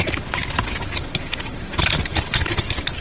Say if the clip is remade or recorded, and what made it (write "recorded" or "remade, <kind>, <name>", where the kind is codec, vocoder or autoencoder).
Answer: recorded